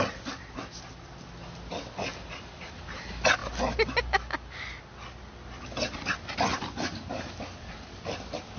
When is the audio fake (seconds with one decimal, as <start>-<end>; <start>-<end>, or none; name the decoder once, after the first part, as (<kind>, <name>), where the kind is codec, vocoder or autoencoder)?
6.5-7.1 (vocoder, BigVGAN v2)